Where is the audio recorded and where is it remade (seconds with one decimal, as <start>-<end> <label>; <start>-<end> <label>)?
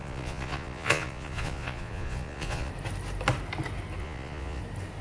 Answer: 0.0-2.7 remade; 2.7-4.0 recorded; 4.0-4.6 remade; 4.6-5.0 recorded